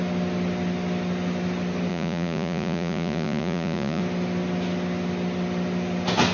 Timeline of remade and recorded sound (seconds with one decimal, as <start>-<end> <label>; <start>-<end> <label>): 0.0-1.9 recorded; 1.9-4.0 remade; 4.0-6.3 recorded